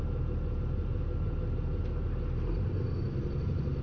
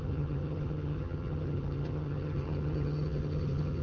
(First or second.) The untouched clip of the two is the first